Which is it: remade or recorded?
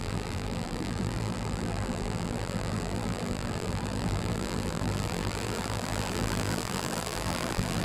remade